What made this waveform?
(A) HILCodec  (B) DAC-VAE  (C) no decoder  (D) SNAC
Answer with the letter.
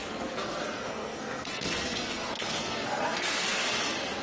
D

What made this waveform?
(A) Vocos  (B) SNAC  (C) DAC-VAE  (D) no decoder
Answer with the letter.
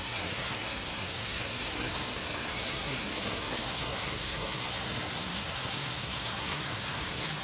B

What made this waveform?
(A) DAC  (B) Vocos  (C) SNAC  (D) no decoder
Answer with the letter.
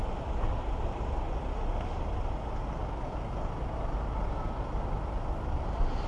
D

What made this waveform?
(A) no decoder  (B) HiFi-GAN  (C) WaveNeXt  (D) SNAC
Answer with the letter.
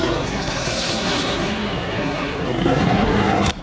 D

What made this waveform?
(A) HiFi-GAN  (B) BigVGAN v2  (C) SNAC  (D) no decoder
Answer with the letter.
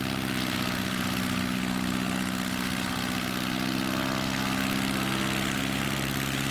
D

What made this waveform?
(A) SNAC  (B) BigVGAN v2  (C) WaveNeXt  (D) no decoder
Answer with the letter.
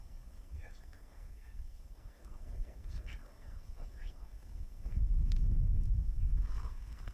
A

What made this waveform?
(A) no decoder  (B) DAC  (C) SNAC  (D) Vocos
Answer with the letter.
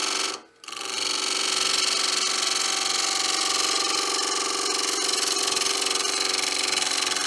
A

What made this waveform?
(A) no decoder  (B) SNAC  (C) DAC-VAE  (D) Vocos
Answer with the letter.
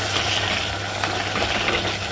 A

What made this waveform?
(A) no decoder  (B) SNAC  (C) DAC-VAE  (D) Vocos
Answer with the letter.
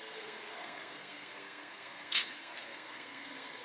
B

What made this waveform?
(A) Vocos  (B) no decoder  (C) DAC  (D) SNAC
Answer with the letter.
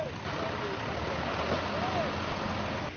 B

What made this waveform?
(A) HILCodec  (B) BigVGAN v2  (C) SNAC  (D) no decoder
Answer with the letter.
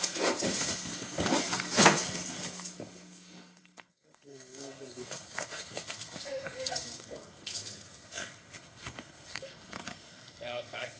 C